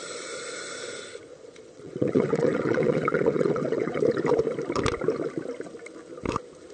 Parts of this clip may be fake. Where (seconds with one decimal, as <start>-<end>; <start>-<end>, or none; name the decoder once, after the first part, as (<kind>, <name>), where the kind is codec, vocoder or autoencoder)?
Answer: 1.3-4.0 (vocoder, Vocos)